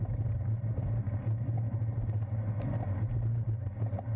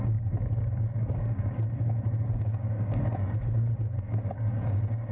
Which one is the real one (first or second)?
first